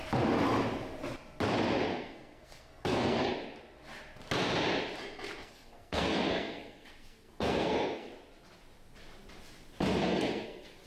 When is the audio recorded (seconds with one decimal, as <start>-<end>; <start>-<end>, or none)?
0.0-1.9; 3.3-5.4; 8.1-10.0